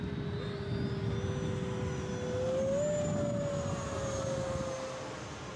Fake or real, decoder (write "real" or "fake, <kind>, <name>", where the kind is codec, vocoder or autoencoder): real